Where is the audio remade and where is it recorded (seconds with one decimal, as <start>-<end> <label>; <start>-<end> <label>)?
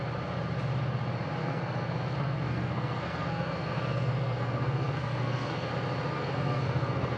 0.0-1.4 recorded; 1.4-5.7 remade; 5.7-6.2 recorded; 6.2-7.2 remade